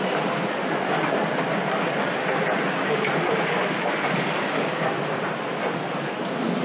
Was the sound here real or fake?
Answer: real